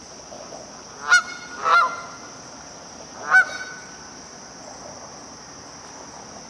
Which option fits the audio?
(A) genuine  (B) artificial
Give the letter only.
A